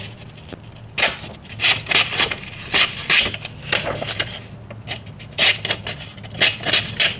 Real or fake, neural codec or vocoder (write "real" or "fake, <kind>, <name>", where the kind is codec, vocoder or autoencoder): real